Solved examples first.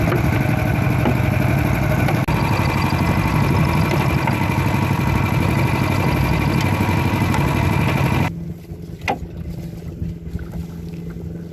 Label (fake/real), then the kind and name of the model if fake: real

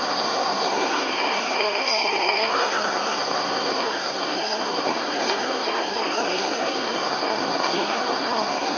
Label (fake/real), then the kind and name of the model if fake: fake, codec, SNAC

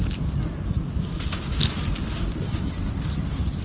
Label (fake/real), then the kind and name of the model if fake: real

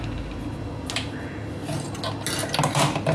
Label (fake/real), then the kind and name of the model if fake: real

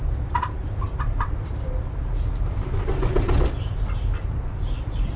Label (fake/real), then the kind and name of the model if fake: real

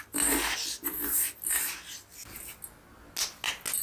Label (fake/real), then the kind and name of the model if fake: real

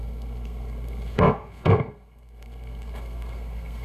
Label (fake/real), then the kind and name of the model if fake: fake, codec, SNAC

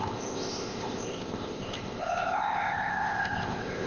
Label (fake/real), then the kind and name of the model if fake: fake, codec, ZipCodec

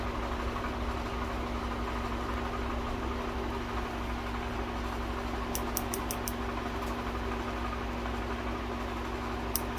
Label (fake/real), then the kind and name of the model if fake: real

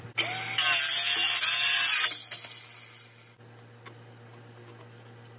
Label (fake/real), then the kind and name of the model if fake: real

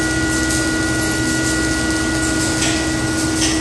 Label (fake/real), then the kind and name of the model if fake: real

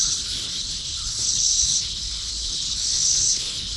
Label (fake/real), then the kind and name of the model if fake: fake, codec, HILCodec